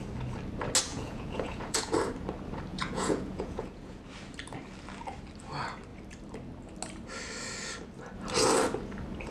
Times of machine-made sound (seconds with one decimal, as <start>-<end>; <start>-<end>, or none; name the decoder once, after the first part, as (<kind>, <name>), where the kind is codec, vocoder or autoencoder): 0.9-1.9 (vocoder, Vocos); 2.7-4.0